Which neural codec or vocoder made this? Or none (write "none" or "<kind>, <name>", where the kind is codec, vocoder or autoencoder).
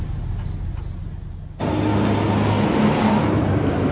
none